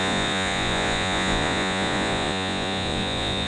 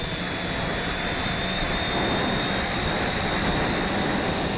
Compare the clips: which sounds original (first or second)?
second